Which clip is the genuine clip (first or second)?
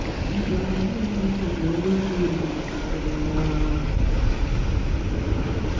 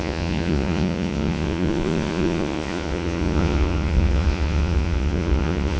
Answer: first